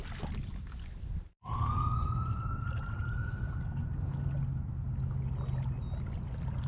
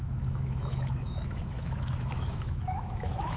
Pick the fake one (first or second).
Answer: second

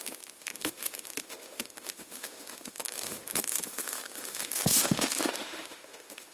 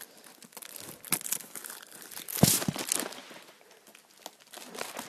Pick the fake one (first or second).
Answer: first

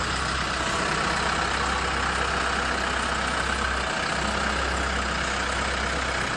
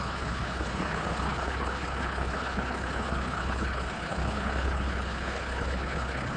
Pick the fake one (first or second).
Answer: second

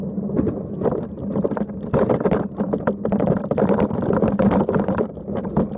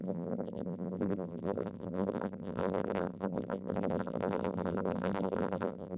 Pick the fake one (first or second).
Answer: second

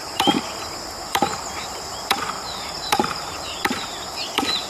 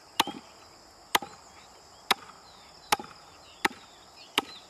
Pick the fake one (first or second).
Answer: first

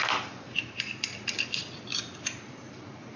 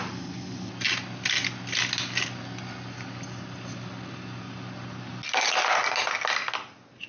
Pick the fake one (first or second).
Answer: first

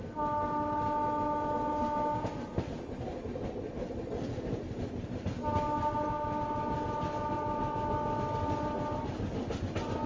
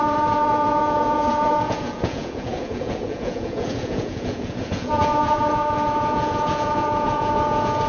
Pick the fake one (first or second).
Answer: second